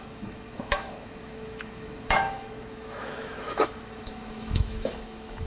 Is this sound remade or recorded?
remade